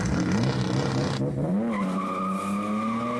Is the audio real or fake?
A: real